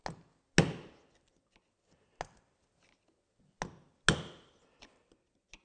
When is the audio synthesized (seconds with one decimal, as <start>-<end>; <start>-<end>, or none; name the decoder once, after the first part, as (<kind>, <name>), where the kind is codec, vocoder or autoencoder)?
none